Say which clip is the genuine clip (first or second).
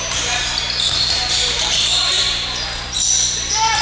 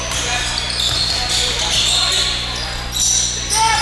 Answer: second